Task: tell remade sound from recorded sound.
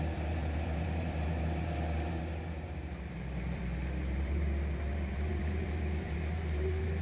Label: remade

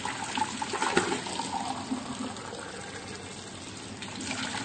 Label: recorded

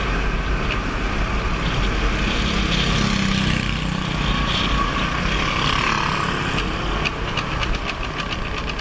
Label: recorded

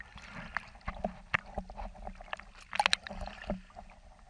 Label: recorded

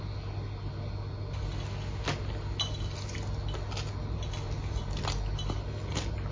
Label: recorded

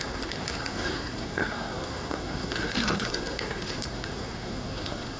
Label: remade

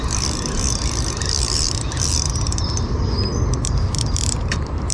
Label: recorded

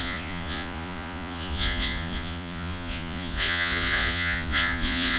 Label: remade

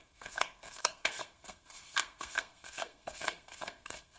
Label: remade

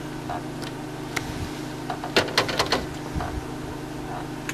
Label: recorded